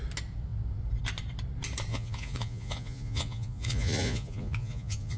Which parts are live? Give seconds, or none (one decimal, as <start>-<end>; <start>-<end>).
0.0-1.9